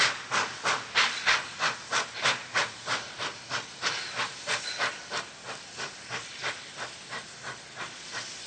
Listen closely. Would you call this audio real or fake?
real